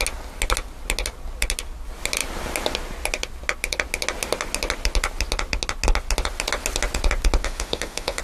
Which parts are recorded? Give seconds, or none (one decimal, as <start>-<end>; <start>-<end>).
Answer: 0.0-7.4